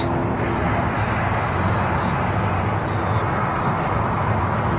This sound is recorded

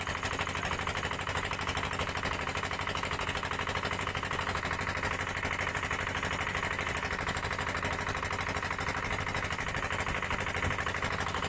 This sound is recorded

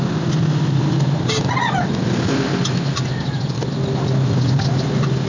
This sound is recorded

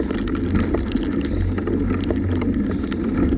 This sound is recorded